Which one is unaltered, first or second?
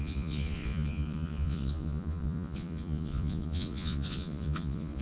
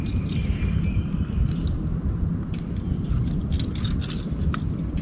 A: second